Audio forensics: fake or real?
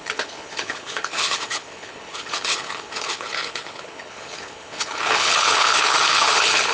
fake